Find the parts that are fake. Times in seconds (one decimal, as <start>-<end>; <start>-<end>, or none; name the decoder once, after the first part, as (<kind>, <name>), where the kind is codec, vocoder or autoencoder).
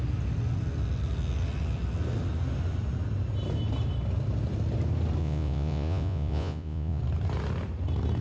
5.2-7.0 (vocoder, Vocos)